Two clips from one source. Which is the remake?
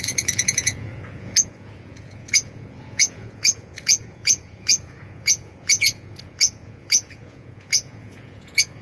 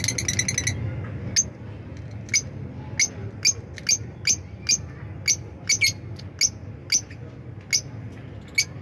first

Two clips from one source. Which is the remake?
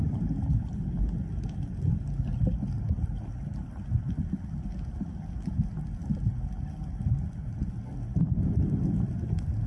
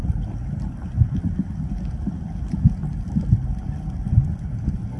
second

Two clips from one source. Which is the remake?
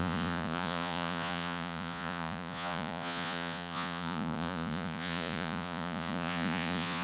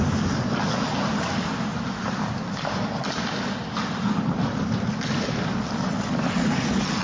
first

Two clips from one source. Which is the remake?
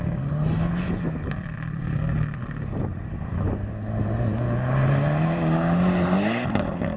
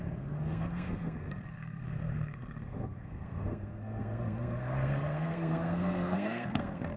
second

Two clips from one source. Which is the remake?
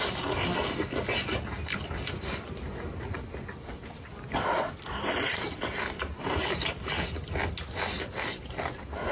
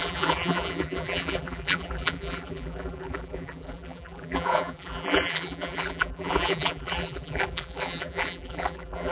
second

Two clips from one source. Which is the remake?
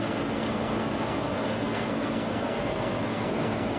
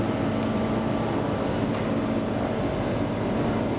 first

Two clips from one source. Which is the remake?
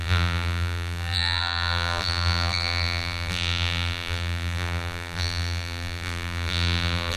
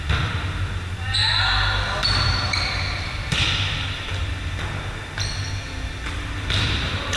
first